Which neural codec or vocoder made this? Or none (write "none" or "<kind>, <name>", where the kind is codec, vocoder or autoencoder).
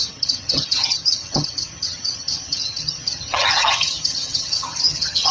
vocoder, HiFi-GAN